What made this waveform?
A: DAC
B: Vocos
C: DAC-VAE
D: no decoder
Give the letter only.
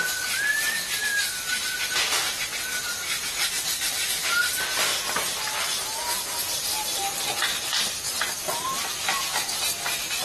D